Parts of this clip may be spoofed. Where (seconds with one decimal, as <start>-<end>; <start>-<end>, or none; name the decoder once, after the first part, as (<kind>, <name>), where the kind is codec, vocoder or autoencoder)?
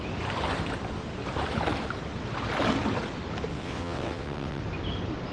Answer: 3.5-4.6 (vocoder, WaveNeXt)